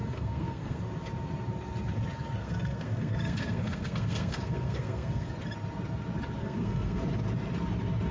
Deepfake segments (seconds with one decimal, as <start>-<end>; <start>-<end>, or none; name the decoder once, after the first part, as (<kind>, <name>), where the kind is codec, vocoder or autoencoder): 0.0-0.8 (codec, SNAC); 2.4-5.3; 6.4-7.0